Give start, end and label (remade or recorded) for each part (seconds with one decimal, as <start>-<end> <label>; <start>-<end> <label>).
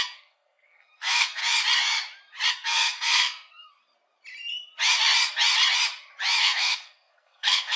0.0-1.4 remade; 1.4-2.5 recorded; 2.5-3.8 remade; 3.8-6.4 recorded; 6.4-7.8 remade